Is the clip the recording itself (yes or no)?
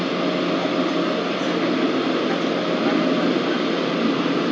yes